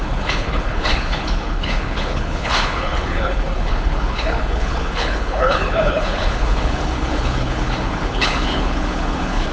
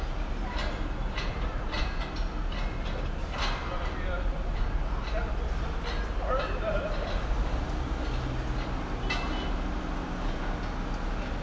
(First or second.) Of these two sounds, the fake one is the first